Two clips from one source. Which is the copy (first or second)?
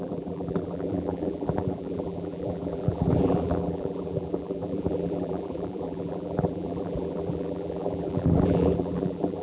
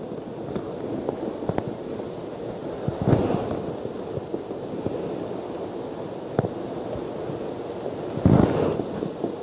first